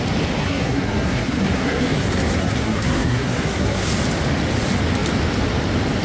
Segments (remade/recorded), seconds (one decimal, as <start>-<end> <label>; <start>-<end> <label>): 0.0-0.4 recorded; 0.4-3.9 remade; 3.9-6.0 recorded